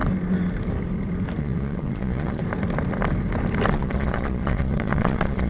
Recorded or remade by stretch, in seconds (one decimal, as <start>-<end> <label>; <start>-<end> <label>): 0.0-1.4 recorded; 1.4-2.4 remade; 2.4-3.7 recorded; 3.7-5.5 remade